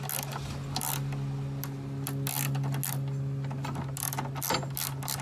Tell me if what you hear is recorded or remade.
recorded